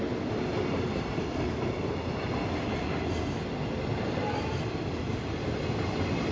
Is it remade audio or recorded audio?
recorded